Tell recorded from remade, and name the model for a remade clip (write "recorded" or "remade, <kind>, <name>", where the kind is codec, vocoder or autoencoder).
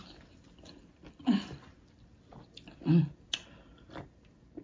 recorded